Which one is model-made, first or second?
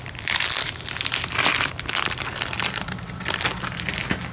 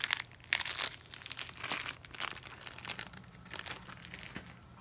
first